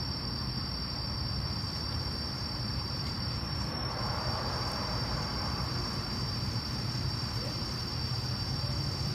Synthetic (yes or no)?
yes